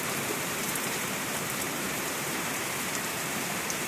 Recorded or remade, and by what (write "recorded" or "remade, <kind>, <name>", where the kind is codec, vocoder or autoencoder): remade, vocoder, BigVGAN v2